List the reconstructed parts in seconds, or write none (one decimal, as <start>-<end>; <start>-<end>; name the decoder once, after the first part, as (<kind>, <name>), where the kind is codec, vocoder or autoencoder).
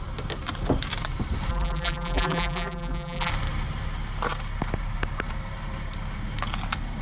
1.5-3.3 (vocoder, BigVGAN v2)